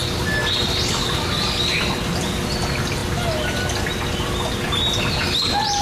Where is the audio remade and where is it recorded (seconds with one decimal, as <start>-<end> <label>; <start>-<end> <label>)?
0.0-5.8 recorded